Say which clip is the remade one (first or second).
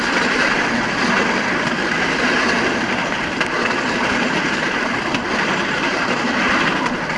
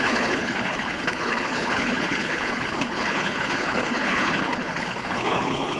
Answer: second